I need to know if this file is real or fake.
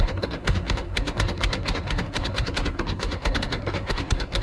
fake